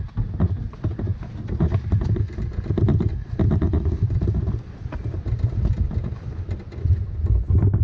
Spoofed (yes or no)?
no